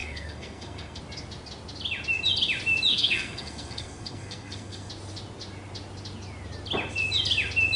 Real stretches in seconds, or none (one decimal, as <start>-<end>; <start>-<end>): 1.0-2.9; 4.9-7.8